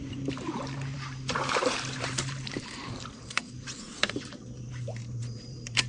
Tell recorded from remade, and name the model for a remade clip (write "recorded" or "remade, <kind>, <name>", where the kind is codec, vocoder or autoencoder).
remade, vocoder, BigVGAN v2